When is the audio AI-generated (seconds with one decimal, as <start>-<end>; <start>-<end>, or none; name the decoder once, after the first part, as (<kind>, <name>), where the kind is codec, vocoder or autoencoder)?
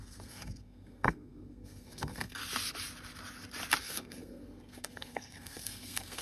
0.0-2.4 (codec, SNAC); 3.8-6.2